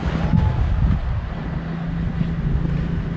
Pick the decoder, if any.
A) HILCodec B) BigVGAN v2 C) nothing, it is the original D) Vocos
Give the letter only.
C